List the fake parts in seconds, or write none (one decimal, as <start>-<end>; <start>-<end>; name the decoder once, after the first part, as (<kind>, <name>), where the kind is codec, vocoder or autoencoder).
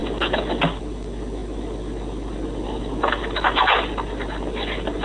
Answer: none